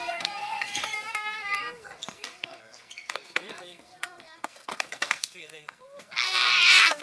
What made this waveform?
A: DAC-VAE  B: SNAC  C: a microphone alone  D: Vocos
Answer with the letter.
B